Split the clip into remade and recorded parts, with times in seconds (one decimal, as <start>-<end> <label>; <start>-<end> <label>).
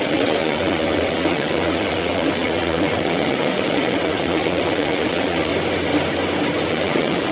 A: 0.0-5.5 remade; 5.5-6.7 recorded; 6.7-7.3 remade